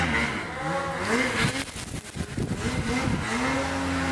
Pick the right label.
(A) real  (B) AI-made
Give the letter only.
A